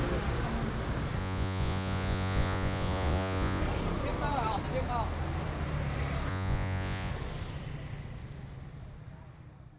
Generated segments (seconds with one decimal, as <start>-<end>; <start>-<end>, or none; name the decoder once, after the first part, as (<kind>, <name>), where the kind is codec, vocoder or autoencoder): 1.2-3.6 (vocoder, Vocos); 6.3-7.1